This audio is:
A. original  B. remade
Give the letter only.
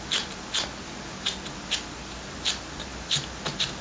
A